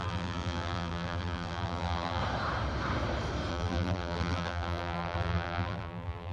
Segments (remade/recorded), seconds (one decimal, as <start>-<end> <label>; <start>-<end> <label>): 0.0-2.2 remade; 2.2-3.5 recorded; 3.5-6.3 remade